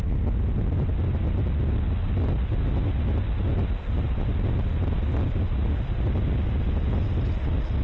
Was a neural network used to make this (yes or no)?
no